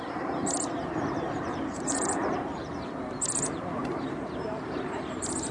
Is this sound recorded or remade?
remade